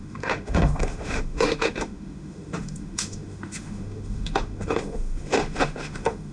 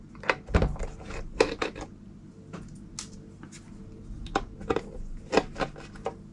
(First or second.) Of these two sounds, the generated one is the first